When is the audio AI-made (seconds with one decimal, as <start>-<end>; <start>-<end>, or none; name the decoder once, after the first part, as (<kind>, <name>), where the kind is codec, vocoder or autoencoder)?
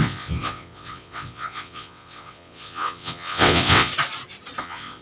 0.0-3.9 (vocoder, WaveNeXt); 4.6-5.0